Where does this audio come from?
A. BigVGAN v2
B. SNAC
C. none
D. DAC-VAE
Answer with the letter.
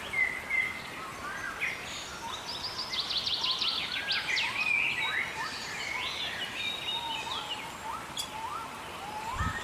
C